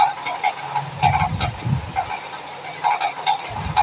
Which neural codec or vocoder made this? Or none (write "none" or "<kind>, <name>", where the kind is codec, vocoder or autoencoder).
none